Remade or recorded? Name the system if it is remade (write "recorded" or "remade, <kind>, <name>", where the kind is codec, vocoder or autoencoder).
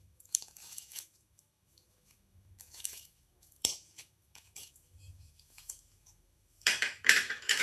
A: remade, autoencoder, DAC-VAE